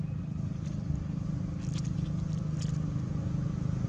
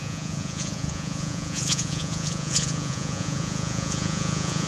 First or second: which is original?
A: first